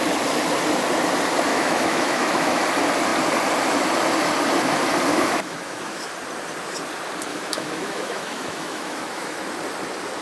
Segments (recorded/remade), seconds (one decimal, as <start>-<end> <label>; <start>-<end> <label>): 0.0-1.5 recorded; 1.5-2.6 remade; 2.6-5.1 recorded; 5.1-6.1 remade; 6.1-7.3 recorded; 7.3-9.4 remade; 9.4-10.2 recorded